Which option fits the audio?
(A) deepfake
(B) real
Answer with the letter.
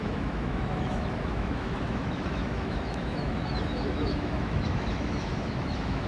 A